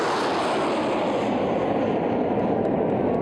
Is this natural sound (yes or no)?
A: yes